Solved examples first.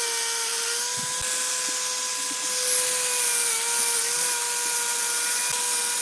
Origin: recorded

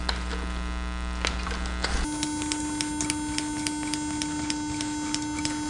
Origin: recorded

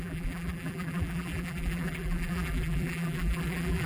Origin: remade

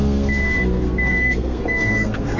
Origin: remade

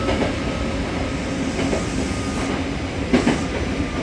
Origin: recorded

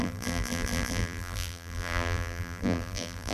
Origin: remade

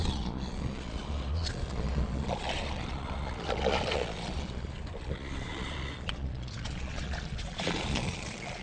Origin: remade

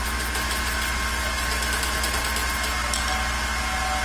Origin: recorded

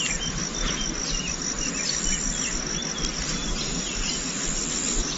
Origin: recorded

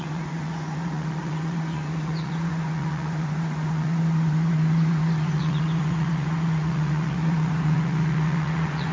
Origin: remade